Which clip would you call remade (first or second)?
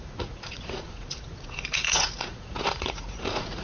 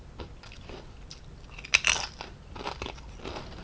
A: first